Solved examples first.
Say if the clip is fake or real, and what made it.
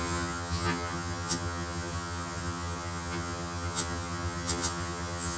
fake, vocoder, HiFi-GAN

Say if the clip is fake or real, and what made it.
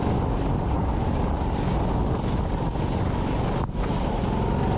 real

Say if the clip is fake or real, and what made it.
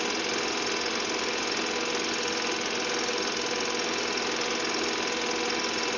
real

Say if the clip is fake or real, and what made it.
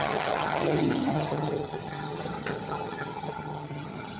fake, vocoder, HiFi-GAN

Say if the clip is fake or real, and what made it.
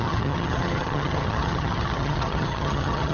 fake, vocoder, HiFi-GAN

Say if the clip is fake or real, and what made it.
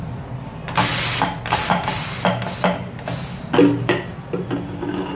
real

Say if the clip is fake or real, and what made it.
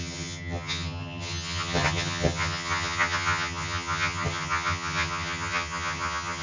fake, vocoder, HiFi-GAN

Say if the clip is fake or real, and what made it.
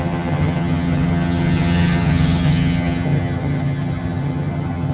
fake, vocoder, HiFi-GAN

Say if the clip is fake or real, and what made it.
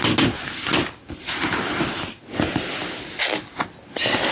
real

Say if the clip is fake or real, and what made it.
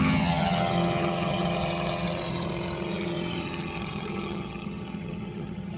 fake, vocoder, HiFi-GAN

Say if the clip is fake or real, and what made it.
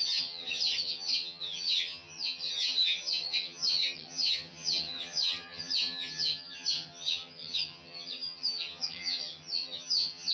fake, vocoder, HiFi-GAN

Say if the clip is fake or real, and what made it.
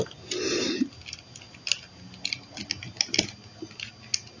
real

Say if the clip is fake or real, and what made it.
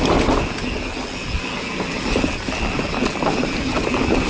real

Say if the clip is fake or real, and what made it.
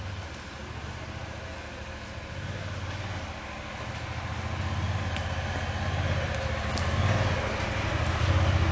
real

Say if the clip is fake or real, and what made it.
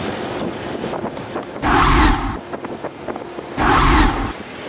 real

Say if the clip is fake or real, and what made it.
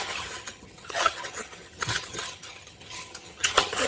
fake, vocoder, HiFi-GAN